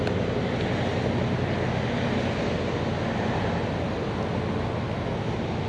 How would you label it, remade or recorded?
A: recorded